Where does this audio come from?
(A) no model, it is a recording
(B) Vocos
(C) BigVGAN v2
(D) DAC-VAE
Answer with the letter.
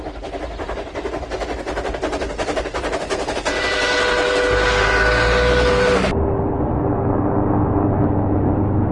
A